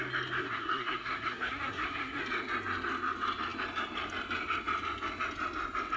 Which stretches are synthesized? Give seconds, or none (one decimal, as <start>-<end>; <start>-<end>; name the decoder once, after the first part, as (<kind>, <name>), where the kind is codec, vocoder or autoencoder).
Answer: 0.4-2.2 (codec, SNAC)